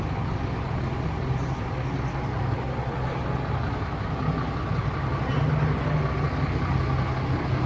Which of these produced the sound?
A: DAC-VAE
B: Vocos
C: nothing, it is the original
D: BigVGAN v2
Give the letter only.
C